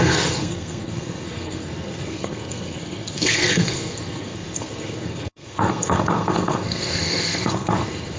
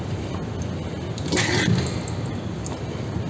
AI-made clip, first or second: first